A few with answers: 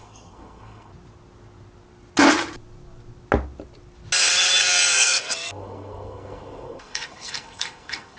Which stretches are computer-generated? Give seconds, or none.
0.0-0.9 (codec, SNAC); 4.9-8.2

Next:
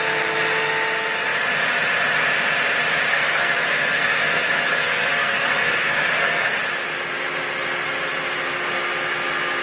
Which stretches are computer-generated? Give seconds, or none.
3.1-6.6 (codec, SNAC)

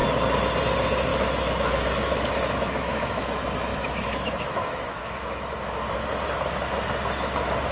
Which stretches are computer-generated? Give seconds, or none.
1.1-3.2 (autoencoder, DAC-VAE); 3.7-5.5

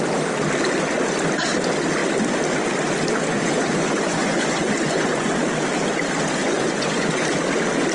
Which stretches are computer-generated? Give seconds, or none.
3.3-5.3 (vocoder, Vocos); 6.4-7.2

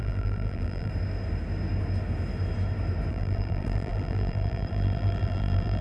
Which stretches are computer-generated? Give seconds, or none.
0.0-0.9 (vocoder, BigVGAN v2); 3.1-5.8

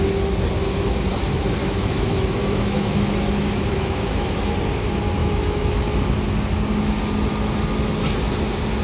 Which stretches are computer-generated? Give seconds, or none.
1.6-4.5 (autoencoder, DAC-VAE); 5.2-5.8